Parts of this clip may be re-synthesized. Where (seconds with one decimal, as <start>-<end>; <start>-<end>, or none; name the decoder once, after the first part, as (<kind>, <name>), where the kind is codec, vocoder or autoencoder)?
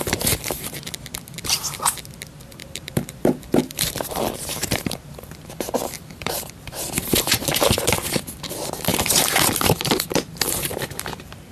2.6-7.8 (vocoder, BigVGAN v2); 8.9-11.5